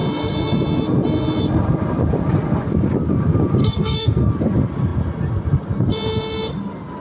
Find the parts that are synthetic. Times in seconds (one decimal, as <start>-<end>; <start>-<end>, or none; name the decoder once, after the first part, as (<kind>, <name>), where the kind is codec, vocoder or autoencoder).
3.6-4.3 (codec, SNAC)